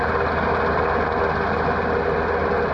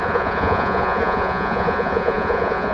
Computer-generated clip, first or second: second